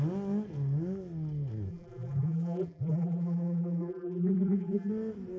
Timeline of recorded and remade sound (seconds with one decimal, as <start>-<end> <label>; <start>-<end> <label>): 0.0-1.7 recorded; 1.7-4.9 remade; 4.9-5.4 recorded